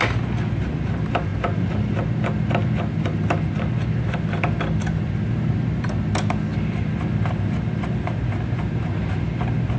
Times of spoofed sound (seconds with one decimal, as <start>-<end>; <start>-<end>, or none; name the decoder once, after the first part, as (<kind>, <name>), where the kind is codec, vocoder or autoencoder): none